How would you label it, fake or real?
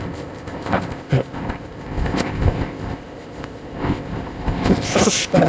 fake